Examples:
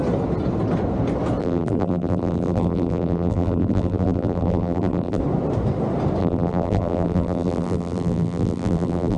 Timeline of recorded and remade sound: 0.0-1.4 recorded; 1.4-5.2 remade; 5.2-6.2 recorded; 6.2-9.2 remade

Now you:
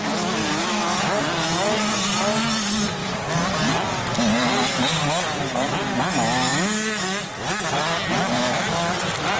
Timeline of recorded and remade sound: 0.0-3.0 recorded; 3.0-3.7 remade; 3.7-9.4 recorded

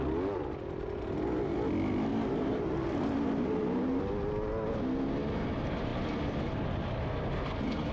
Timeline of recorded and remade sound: 0.0-2.1 recorded; 2.1-4.0 remade; 4.0-7.9 recorded